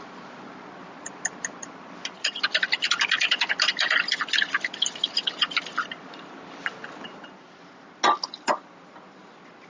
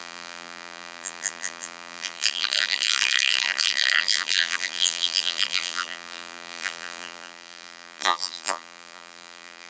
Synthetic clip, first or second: second